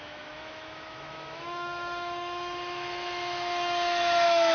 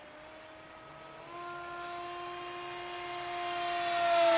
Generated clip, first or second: first